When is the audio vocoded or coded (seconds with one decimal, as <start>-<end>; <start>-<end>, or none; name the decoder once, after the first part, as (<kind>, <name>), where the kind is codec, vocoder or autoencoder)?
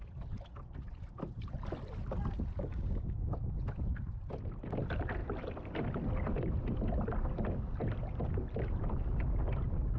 2.7-3.3 (codec, DAC)